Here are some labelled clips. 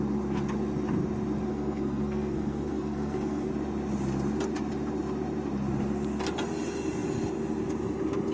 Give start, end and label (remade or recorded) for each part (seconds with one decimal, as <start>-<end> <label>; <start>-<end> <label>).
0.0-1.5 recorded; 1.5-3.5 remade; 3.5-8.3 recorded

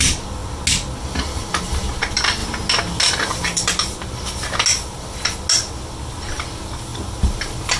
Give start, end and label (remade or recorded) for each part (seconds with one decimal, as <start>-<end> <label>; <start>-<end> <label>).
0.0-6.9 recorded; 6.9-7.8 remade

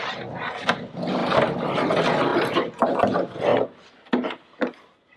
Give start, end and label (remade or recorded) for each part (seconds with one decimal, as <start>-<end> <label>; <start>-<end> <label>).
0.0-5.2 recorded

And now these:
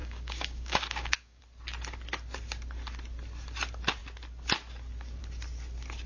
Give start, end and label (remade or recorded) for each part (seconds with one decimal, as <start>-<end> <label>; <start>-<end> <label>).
0.0-1.4 remade; 1.4-6.1 recorded

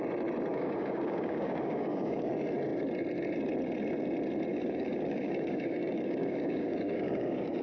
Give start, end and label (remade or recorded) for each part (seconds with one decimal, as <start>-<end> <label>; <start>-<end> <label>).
0.0-0.5 recorded; 0.5-2.3 remade; 2.3-4.5 recorded; 4.5-7.6 remade

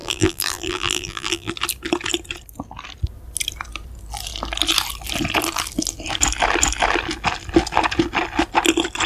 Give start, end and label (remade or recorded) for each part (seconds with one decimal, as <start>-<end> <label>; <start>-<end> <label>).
0.0-1.5 remade; 1.5-9.1 recorded

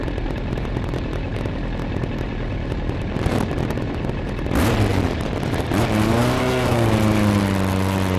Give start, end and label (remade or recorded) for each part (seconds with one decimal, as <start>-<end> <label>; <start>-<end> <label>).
0.0-6.4 recorded; 6.4-6.9 remade; 6.9-8.2 recorded

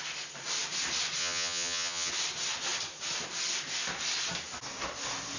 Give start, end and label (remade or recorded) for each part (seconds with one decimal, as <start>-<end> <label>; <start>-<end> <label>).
0.0-1.2 recorded; 1.2-2.1 remade; 2.1-5.4 recorded